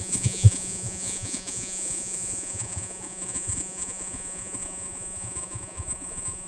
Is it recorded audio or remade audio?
remade